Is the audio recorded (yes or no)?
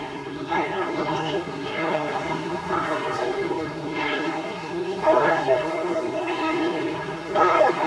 no